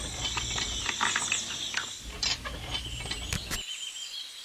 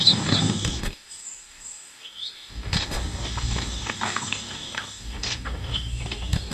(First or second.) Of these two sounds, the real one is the first